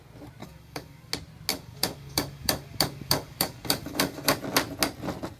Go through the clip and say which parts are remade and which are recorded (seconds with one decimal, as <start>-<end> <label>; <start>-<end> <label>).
0.0-0.4 recorded; 0.4-1.1 remade; 1.1-1.5 recorded; 1.5-4.4 remade; 4.4-5.4 recorded